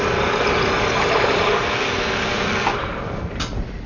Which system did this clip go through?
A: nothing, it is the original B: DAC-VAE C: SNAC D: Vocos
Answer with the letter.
A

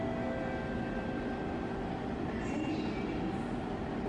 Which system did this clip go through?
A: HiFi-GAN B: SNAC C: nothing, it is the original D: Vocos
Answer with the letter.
C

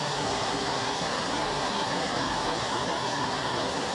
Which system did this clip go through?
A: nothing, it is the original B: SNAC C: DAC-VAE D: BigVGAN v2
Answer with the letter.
B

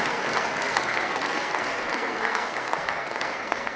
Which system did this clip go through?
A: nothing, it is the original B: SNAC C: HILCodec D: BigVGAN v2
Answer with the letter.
B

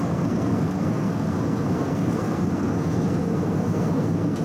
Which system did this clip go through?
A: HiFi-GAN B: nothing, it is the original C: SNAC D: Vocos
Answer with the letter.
C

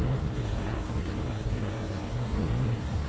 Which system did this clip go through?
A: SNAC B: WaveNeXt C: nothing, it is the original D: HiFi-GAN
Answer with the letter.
A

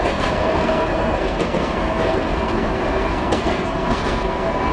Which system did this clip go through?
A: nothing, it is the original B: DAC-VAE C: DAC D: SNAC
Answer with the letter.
D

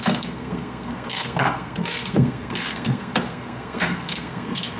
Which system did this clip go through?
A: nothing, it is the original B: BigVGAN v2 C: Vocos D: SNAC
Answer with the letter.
D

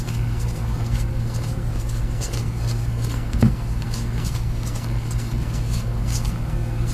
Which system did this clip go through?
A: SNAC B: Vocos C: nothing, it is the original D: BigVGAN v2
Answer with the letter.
A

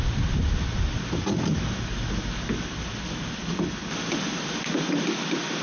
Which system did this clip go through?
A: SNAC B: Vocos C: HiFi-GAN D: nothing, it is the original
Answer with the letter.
D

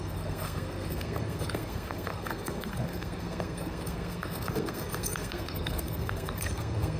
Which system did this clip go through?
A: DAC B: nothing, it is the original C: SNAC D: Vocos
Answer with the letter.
C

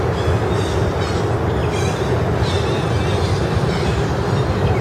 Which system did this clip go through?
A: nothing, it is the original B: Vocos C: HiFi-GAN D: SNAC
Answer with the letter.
A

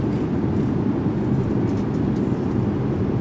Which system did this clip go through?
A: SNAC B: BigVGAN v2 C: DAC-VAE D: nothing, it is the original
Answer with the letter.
D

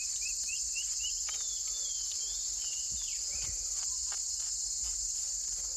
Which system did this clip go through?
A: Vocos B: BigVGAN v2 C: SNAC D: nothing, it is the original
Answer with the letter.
D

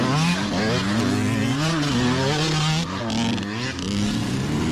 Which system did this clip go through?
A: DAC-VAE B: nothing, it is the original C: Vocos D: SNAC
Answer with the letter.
B